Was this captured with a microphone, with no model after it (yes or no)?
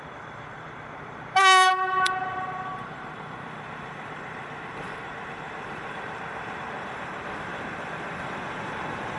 no